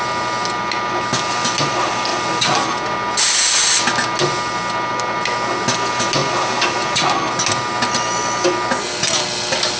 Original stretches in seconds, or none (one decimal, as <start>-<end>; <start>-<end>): 0.0-9.8